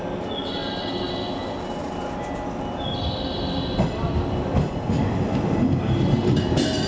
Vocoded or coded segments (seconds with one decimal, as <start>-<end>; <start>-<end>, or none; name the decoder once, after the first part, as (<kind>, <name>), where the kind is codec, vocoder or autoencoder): none